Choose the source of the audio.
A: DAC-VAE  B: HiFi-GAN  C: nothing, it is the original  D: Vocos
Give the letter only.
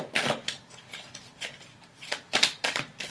C